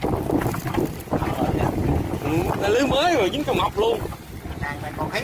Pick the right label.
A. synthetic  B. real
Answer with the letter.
B